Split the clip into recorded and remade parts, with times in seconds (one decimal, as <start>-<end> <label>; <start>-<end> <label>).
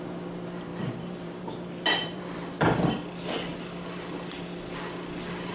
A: 0.0-0.7 recorded; 0.7-1.5 remade; 1.5-2.0 recorded; 2.0-3.0 remade; 3.0-5.5 recorded